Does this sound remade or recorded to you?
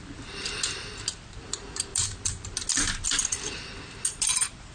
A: recorded